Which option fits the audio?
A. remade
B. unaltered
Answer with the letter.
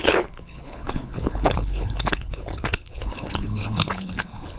A